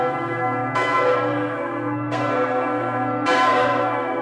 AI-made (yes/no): yes